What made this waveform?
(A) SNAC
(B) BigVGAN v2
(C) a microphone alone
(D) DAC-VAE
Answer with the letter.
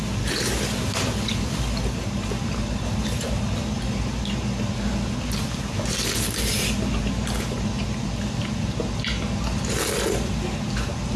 C